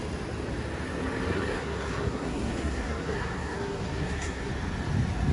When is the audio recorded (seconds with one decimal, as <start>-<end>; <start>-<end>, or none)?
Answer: 0.0-1.3; 4.5-5.3